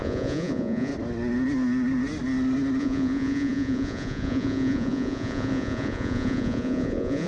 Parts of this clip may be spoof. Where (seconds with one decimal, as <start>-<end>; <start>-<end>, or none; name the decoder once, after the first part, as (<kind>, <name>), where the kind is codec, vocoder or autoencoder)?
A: 0.0-0.9 (vocoder, Vocos); 2.8-7.3